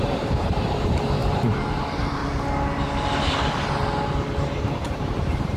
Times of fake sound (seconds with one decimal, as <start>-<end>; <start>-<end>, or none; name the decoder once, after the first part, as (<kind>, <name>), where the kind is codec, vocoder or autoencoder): 0.0-2.2 (vocoder, BigVGAN v2); 4.6-5.6